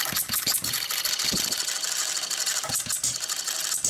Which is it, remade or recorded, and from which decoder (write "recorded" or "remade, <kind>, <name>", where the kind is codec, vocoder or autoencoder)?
recorded